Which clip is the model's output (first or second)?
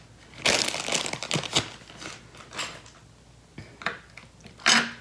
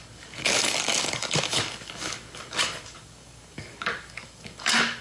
second